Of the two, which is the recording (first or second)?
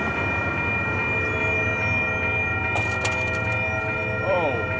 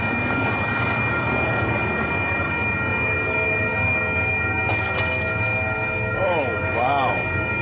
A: first